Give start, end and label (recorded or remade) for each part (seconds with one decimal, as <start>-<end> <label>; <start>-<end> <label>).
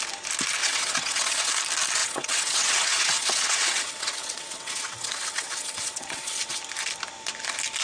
0.0-0.6 recorded; 0.6-1.5 remade; 1.5-2.0 recorded; 2.0-6.6 remade; 6.6-7.8 recorded